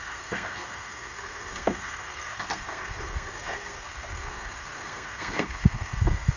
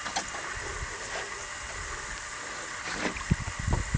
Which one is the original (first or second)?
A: second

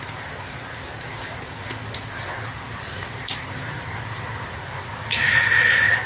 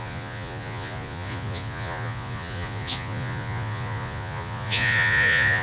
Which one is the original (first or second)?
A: first